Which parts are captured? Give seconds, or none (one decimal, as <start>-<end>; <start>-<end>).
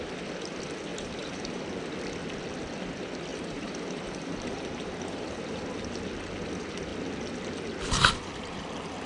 0.0-0.9; 1.6-3.3; 5.6-9.1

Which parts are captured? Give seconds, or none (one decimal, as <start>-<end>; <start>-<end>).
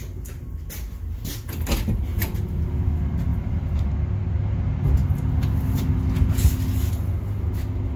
0.0-2.1; 2.6-3.3; 3.9-5.0; 5.5-8.0